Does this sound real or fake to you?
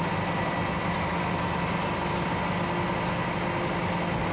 real